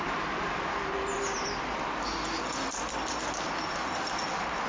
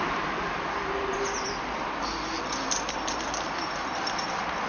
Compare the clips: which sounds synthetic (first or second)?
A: second